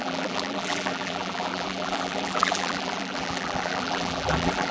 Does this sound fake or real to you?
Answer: fake